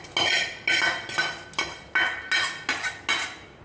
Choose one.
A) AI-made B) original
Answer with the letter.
B